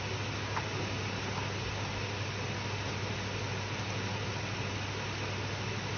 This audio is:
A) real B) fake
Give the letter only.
A